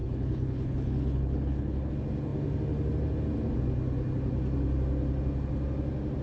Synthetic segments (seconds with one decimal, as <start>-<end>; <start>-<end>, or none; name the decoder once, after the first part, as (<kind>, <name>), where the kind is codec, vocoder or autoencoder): 0.0-1.9 (codec, HILCodec)